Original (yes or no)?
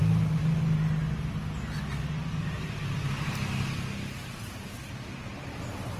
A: yes